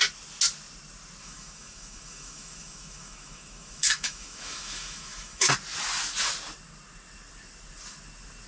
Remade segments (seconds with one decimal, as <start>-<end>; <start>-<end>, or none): 1.2-5.5